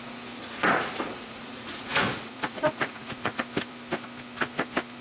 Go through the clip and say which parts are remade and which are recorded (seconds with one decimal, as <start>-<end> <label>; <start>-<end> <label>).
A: 0.0-0.4 recorded; 0.4-3.4 remade; 3.4-5.0 recorded

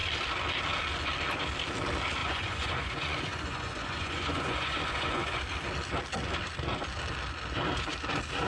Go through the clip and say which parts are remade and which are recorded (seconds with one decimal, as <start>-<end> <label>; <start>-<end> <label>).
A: 0.0-2.2 recorded; 2.2-5.4 remade; 5.4-8.5 recorded

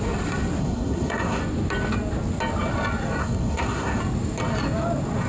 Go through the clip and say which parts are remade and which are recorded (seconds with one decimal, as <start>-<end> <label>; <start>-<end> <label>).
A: 0.0-0.6 recorded; 0.6-1.4 remade; 1.4-3.2 recorded; 3.2-4.0 remade; 4.0-5.3 recorded

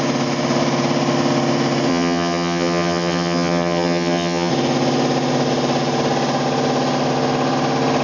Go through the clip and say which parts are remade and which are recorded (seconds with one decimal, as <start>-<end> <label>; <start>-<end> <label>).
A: 0.0-1.9 recorded; 1.9-4.5 remade; 4.5-8.0 recorded

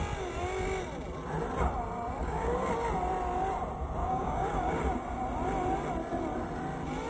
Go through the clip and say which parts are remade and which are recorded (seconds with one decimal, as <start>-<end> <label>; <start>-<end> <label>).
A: 0.0-2.2 recorded; 2.2-2.7 remade; 2.7-4.0 recorded; 4.0-4.8 remade; 4.8-7.1 recorded

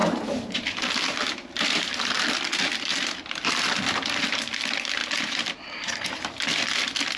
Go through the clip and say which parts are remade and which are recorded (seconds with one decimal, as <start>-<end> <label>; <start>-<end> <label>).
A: 0.0-2.4 remade; 2.4-2.9 recorded; 2.9-3.5 remade; 3.5-5.0 recorded; 5.0-6.3 remade; 6.3-7.2 recorded